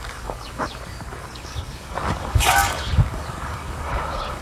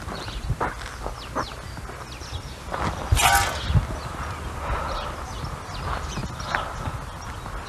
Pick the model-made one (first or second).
first